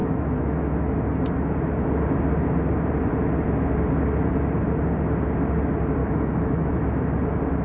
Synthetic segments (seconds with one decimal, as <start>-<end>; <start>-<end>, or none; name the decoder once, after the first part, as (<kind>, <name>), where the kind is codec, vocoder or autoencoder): 0.0-0.7 (autoencoder, DAC-VAE); 6.0-6.7